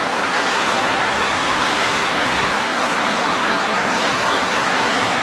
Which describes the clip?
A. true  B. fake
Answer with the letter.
B